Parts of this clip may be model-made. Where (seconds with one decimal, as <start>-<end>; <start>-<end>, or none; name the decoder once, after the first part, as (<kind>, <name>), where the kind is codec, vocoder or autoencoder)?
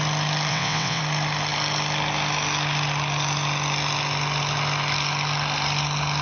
0.5-1.0 (vocoder, WaveNeXt)